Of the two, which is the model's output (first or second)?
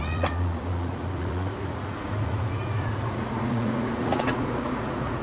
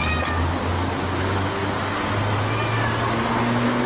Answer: first